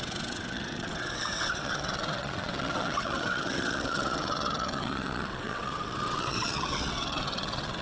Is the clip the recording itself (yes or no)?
no